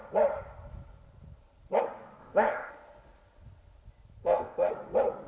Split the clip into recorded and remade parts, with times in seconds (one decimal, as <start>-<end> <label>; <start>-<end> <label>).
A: 0.0-2.2 recorded; 2.2-2.7 remade; 2.7-4.2 recorded; 4.2-4.7 remade; 4.7-5.3 recorded